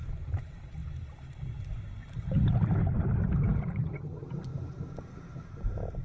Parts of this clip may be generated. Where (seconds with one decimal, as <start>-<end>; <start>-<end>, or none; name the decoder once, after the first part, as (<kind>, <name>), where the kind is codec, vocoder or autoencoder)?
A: 0.0-0.8 (vocoder, BigVGAN v2); 2.8-6.0